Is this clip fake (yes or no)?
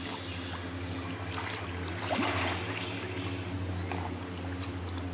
no